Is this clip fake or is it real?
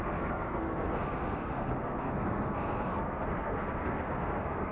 fake